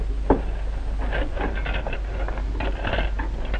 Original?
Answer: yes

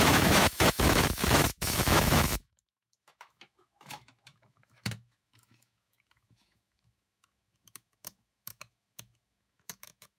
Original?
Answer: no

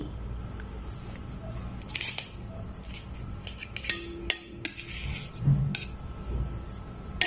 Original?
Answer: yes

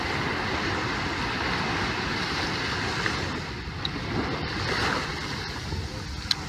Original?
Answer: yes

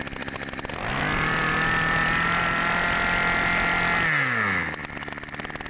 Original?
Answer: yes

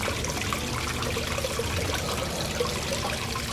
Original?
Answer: yes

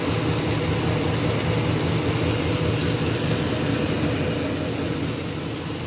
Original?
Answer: yes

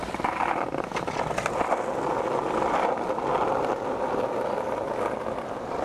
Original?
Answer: yes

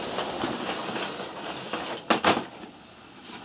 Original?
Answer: yes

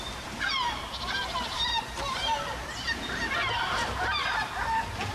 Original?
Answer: no